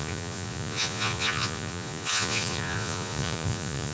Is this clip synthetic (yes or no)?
yes